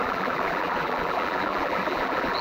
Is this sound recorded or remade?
remade